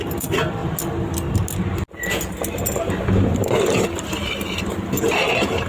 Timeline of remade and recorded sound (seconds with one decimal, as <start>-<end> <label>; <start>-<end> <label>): 0.0-3.3 recorded; 3.3-5.0 remade; 5.0-5.7 recorded